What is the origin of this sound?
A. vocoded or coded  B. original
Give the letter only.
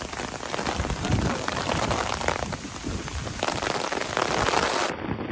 B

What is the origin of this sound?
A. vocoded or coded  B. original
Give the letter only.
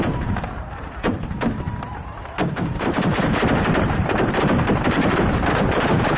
A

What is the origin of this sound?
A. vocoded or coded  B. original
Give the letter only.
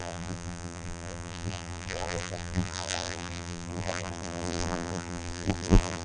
A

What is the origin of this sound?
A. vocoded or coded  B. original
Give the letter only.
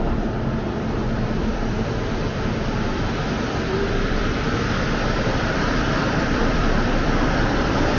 A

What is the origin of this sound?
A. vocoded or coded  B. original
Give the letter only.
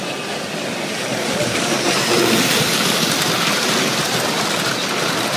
B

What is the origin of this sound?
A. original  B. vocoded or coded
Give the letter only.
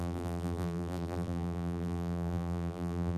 B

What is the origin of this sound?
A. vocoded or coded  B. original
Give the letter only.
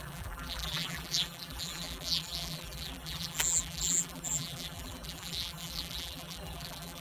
A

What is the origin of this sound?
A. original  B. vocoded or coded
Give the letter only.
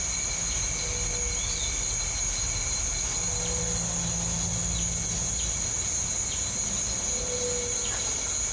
A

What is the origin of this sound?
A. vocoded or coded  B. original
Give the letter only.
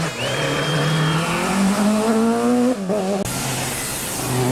B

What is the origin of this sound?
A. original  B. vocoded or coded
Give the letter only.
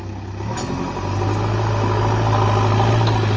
A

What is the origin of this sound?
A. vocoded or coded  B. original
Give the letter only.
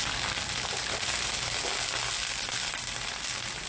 B